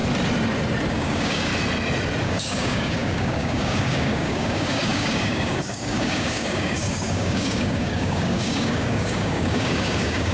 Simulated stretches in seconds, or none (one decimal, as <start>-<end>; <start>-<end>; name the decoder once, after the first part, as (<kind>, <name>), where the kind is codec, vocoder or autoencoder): 0.9-1.5 (codec, DAC); 2.2-10.3

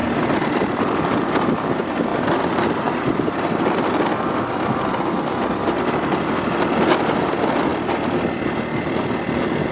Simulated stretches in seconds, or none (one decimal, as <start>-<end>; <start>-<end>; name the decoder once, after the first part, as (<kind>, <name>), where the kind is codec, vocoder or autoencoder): 0.0-1.3 (vocoder, BigVGAN v2); 2.1-4.8

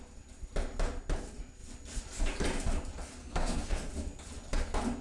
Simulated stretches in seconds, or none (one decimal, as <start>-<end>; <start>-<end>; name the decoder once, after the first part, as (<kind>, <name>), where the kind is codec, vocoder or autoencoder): 3.2-3.9 (codec, SNAC)

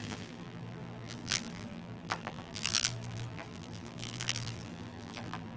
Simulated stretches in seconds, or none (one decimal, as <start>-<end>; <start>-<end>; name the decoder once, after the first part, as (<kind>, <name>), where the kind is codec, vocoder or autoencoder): 0.0-5.6 (vocoder, BigVGAN v2)

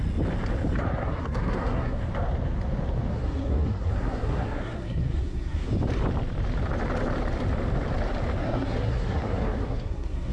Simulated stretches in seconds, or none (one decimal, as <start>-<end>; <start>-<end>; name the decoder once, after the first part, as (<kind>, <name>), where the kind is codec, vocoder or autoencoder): 1.0-2.0 (codec, SNAC); 3.1-5.7; 8.4-10.3

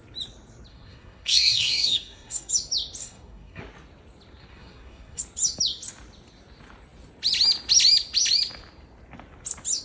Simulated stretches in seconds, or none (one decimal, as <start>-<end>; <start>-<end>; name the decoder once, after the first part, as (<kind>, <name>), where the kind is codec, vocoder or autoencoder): 0.7-2.5 (codec, SNAC); 3.0-3.6; 4.5-5.2